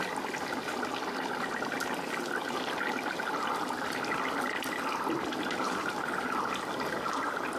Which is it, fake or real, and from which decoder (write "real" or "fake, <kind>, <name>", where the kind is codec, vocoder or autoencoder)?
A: real